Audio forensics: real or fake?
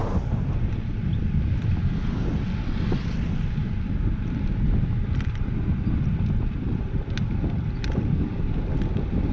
real